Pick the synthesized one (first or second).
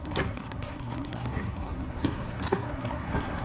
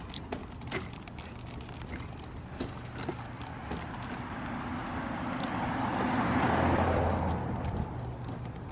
first